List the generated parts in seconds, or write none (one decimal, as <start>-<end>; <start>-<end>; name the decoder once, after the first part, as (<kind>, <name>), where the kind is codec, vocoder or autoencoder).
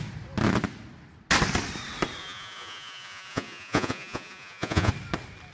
2.2-4.9 (vocoder, Vocos)